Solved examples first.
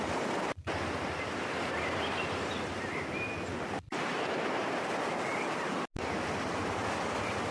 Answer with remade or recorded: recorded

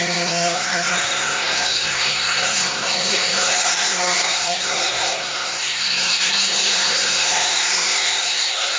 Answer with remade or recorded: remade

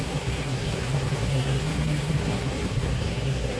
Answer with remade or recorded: remade